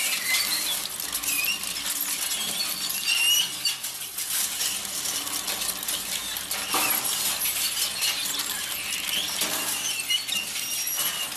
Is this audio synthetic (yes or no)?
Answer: no